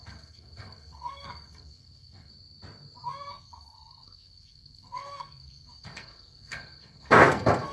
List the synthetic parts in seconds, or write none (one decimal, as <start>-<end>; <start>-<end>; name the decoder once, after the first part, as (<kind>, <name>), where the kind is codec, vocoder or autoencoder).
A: 0.0-2.3 (codec, SNAC); 3.3-7.7